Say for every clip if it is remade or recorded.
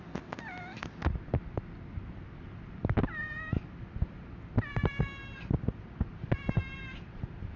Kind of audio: recorded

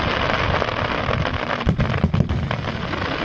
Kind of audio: recorded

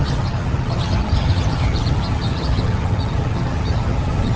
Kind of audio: remade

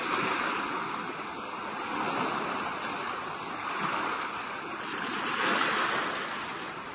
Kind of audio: recorded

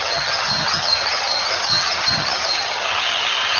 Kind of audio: remade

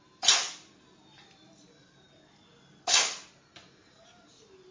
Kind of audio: recorded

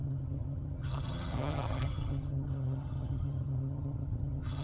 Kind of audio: remade